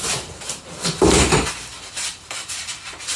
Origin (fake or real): fake